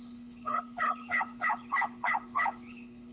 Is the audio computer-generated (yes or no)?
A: yes